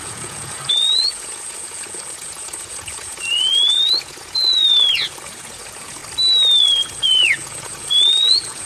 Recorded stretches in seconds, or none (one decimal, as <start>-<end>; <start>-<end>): 6.0-6.6